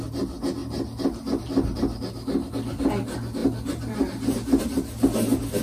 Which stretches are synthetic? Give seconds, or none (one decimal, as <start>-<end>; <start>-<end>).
none